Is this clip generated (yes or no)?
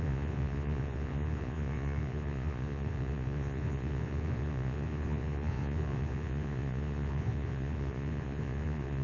yes